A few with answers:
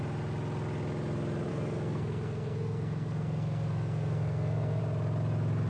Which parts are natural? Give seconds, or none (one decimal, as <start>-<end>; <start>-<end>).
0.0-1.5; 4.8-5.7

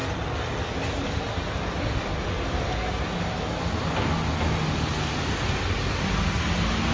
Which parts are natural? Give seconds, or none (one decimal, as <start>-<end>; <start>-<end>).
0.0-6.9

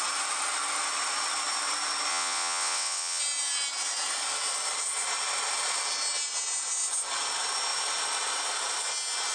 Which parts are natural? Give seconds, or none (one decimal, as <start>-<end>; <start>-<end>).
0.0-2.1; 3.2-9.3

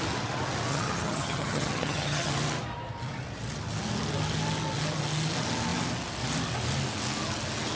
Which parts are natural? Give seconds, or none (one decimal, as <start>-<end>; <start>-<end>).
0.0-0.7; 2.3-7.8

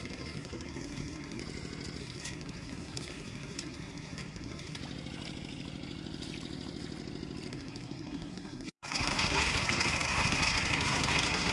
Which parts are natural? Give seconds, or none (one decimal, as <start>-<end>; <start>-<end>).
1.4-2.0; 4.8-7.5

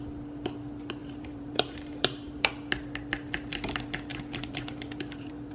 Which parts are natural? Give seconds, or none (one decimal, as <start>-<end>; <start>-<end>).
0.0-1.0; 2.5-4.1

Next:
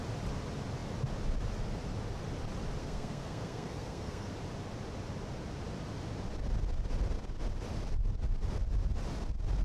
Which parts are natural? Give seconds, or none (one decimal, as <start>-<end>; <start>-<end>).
0.0-2.8; 4.3-9.6

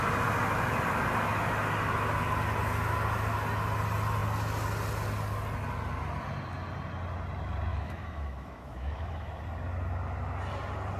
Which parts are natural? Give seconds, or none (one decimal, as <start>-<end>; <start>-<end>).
0.0-7.7; 9.4-11.0